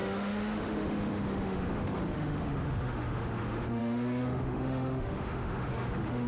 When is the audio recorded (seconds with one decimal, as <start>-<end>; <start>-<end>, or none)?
none